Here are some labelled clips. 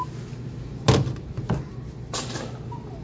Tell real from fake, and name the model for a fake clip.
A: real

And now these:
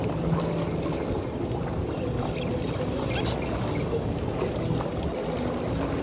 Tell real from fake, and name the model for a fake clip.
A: real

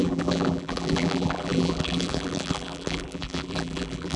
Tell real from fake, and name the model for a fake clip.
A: fake, vocoder, BigVGAN v2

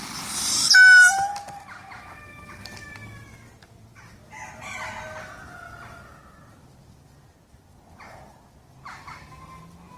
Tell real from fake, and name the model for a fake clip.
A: real